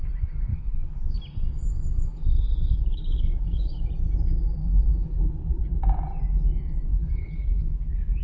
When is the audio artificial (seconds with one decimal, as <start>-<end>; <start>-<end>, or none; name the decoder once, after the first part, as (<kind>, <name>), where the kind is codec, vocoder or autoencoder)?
0.5-1.2 (codec, HILCodec); 2.1-3.8; 4.6-5.6; 6.9-8.2